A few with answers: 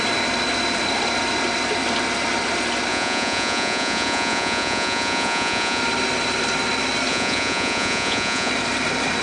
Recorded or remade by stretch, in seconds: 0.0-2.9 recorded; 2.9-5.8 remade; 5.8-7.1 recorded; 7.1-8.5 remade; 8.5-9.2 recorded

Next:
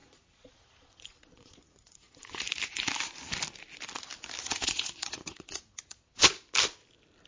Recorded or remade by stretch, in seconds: 0.0-2.4 remade; 2.4-4.4 recorded; 4.4-6.3 remade; 6.3-7.3 recorded

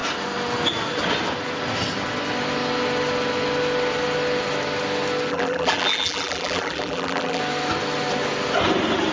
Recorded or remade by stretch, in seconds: 0.0-5.3 recorded; 5.3-7.4 remade; 7.4-9.1 recorded

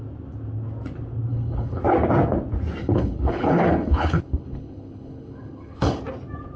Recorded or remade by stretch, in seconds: 0.0-1.3 recorded; 1.3-1.8 remade; 1.8-2.8 recorded; 2.8-6.0 remade; 6.0-6.6 recorded

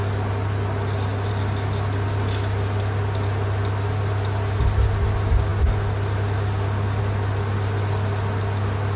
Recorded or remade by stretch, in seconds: 0.0-9.0 recorded